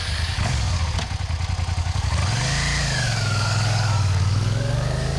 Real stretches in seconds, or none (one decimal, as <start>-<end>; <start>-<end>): 0.8-1.8; 2.2-2.8

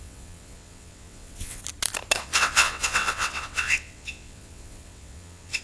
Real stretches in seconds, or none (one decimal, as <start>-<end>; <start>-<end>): 1.6-2.2

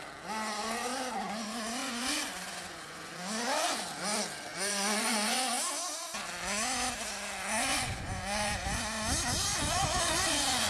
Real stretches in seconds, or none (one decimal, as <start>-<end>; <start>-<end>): 0.0-1.8; 3.1-4.5; 5.4-7.7; 8.8-9.5

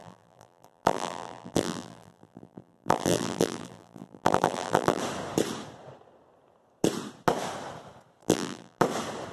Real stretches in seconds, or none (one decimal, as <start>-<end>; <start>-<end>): 5.0-8.2; 8.8-9.3